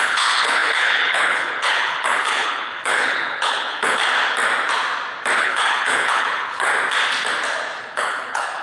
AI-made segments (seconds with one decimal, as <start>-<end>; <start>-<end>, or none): 0.0-4.0; 5.4-6.7; 7.8-8.6